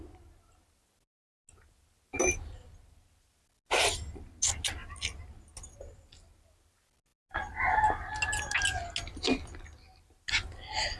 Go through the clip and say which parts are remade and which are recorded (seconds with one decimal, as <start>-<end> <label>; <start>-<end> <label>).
0.0-11.0 recorded

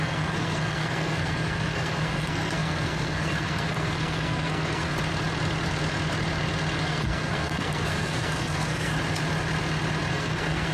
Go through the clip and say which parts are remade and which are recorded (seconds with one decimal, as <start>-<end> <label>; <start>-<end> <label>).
0.0-4.9 remade; 4.9-6.8 recorded; 6.8-8.9 remade; 8.9-10.1 recorded; 10.1-10.7 remade

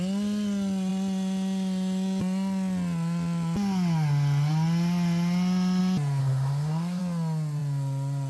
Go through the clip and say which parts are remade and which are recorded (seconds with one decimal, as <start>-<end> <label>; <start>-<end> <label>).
0.0-6.2 recorded; 6.2-7.0 remade; 7.0-8.3 recorded

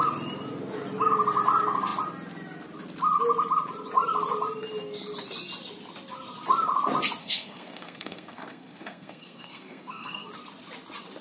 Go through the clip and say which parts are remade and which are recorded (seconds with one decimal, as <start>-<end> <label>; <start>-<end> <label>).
0.0-7.2 recorded; 7.2-10.3 remade; 10.3-11.2 recorded

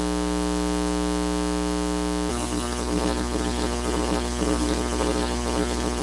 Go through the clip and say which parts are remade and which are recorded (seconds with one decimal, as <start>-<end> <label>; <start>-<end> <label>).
0.0-2.3 recorded; 2.3-6.0 remade

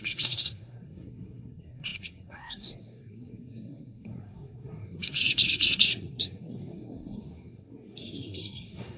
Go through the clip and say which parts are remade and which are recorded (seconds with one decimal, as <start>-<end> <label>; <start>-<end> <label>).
0.0-9.0 remade

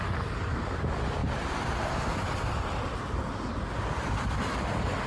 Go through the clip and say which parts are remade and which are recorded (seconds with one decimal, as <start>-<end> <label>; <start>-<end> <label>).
0.0-5.1 recorded